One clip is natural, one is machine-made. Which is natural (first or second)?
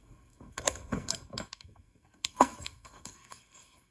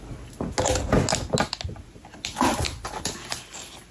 second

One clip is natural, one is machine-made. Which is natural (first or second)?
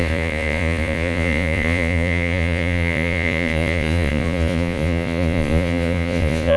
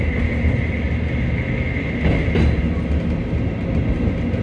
second